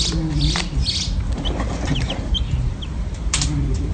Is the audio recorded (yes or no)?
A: yes